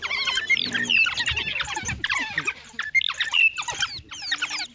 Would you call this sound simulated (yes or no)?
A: no